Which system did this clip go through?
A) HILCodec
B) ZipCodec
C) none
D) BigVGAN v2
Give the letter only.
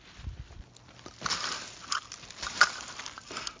C